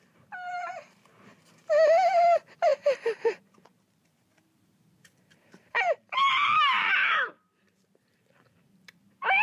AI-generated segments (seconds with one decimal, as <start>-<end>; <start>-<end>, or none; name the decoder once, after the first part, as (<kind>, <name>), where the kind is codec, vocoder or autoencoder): 0.0-1.4 (vocoder, BigVGAN v2); 2.1-9.4